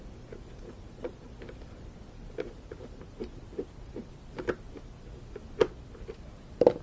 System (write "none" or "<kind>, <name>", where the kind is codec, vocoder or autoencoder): none